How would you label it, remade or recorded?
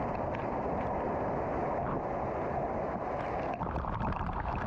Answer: recorded